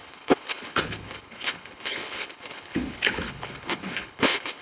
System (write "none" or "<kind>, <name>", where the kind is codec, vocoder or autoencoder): codec, HILCodec